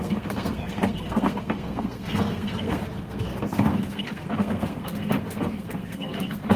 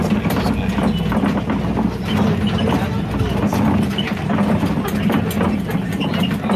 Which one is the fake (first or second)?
first